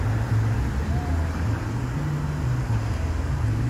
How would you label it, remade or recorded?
recorded